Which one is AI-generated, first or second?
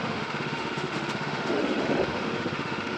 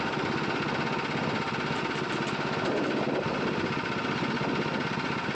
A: first